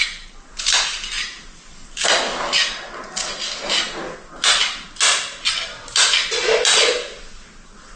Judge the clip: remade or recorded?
recorded